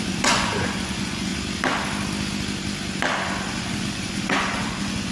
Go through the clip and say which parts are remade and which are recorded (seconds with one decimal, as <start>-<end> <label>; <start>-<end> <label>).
0.0-1.3 remade; 1.3-3.5 recorded; 3.5-5.1 remade